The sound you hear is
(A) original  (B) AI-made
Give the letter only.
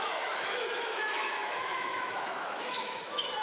B